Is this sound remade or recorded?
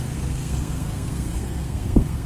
remade